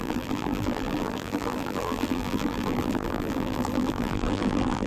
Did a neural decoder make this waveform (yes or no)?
yes